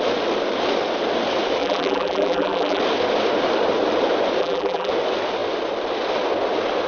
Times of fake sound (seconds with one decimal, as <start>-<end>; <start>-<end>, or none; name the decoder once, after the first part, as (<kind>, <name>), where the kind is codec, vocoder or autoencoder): 1.6-2.8 (vocoder, BigVGAN v2); 4.4-4.9